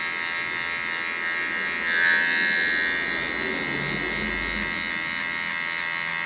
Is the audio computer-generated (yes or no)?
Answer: no